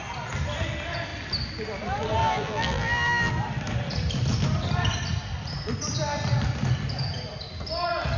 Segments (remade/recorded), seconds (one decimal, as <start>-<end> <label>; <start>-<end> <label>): 0.0-2.2 recorded; 2.2-3.3 remade; 3.3-8.2 recorded